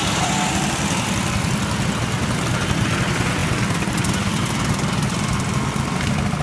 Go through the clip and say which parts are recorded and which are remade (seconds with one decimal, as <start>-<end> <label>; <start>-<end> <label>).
0.0-6.4 recorded